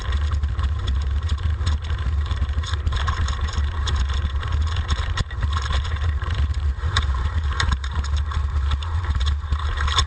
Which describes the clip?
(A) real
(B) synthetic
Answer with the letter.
B